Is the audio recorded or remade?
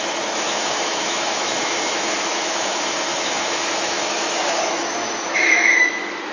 remade